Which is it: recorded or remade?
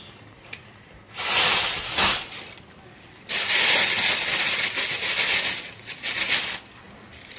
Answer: recorded